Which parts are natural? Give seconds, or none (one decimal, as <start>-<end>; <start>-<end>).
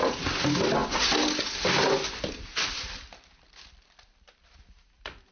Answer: 0.0-5.3